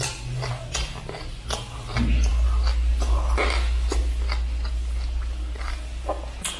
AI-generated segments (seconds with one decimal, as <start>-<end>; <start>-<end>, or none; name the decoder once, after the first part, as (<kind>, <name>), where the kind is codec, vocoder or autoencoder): none